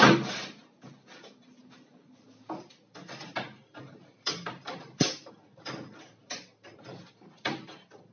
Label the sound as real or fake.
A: fake